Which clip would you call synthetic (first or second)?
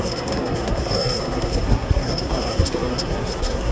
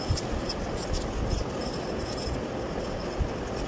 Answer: first